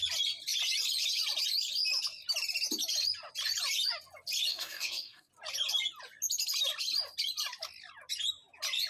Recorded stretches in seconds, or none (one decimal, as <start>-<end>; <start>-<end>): 0.0-4.5; 5.3-8.9